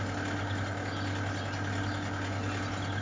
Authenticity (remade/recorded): recorded